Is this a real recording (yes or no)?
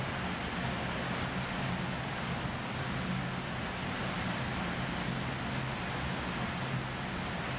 yes